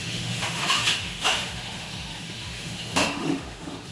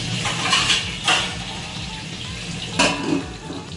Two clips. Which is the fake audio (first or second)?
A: first